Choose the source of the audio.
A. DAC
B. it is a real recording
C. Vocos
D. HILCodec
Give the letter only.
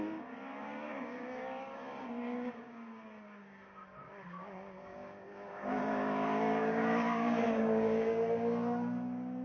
A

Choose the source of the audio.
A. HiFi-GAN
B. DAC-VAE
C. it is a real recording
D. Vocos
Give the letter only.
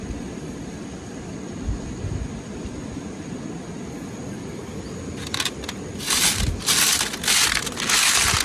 C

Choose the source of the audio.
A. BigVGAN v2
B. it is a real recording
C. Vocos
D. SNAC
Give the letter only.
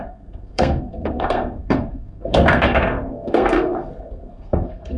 D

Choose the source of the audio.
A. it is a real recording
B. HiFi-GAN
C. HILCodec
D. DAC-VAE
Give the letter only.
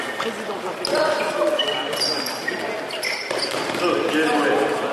A